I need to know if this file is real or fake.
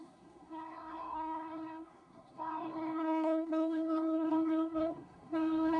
fake